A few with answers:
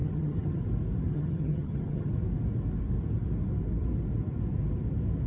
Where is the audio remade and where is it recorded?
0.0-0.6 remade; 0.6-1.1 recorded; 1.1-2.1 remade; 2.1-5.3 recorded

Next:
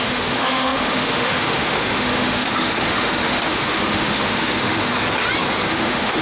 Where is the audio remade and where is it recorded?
0.0-4.9 remade; 4.9-5.7 recorded; 5.7-6.2 remade

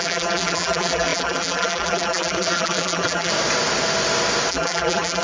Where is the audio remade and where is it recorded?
0.0-3.3 remade; 3.3-4.5 recorded; 4.5-5.2 remade

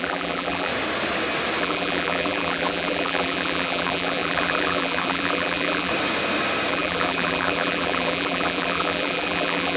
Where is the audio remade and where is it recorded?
0.0-0.7 remade; 0.7-1.6 recorded; 1.6-5.9 remade; 5.9-6.7 recorded; 6.7-9.8 remade

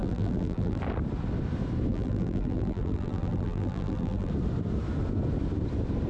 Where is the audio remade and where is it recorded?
0.0-0.8 remade; 0.8-1.9 recorded; 1.9-4.3 remade; 4.3-6.1 recorded

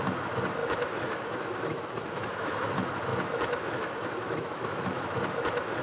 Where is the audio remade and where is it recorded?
0.0-5.8 remade